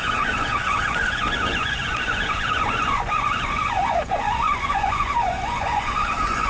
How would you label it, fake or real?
fake